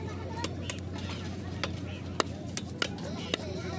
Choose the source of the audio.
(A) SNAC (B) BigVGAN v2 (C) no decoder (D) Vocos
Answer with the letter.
C